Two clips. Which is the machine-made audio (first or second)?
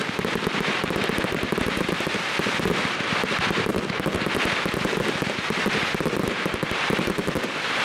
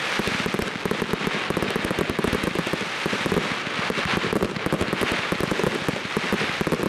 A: first